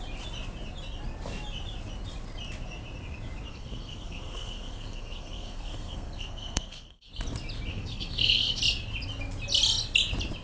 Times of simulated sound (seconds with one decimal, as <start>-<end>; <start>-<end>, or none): 3.5-7.1; 7.7-8.6